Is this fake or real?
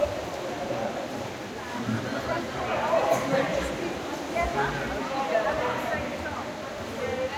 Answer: real